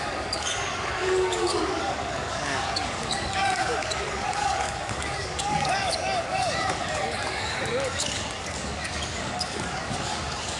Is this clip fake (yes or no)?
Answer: yes